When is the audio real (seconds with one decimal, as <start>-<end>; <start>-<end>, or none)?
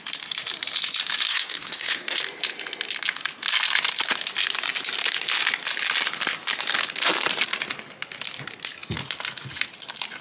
0.0-1.3; 2.2-10.2